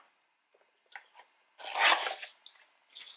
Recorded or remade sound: recorded